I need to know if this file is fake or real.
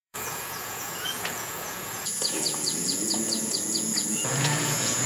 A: fake